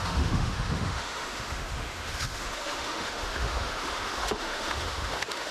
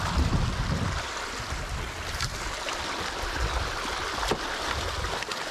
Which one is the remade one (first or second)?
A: first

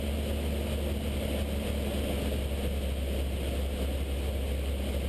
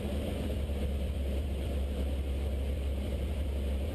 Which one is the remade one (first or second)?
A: second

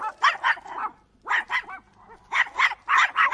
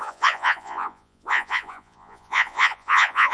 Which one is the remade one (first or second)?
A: second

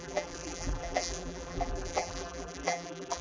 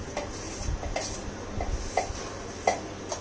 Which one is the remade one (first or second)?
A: first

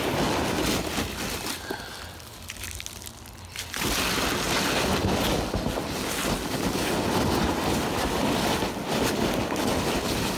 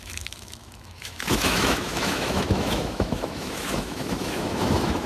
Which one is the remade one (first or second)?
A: second